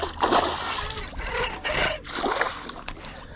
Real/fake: fake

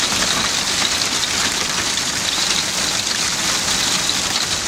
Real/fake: real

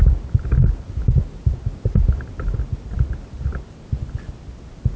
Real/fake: real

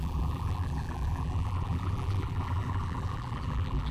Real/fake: fake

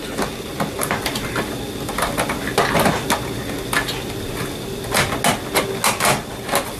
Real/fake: real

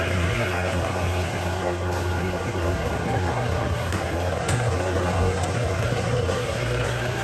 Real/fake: fake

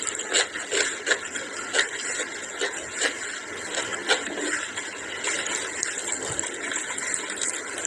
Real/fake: real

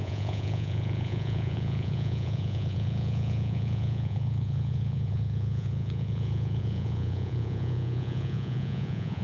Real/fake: fake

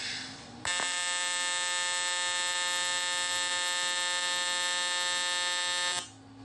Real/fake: real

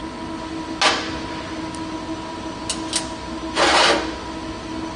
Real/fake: real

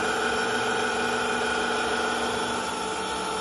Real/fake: real